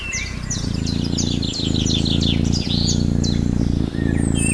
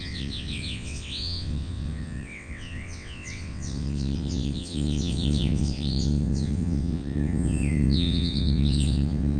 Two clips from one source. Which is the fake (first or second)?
second